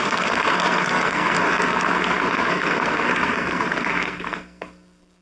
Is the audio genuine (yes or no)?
no